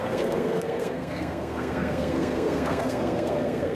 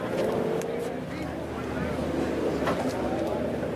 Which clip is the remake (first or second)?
first